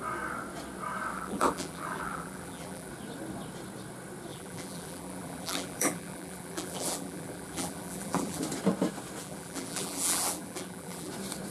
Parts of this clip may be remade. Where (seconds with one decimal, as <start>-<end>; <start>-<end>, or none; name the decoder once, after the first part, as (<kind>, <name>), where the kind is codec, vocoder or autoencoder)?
1.1-2.9 (vocoder, BigVGAN v2); 4.3-8.4; 9.2-11.1